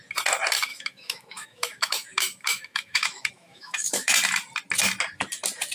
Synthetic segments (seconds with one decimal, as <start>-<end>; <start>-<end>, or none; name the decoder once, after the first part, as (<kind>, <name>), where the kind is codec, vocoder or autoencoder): 0.7-4.1 (autoencoder, DAC-VAE)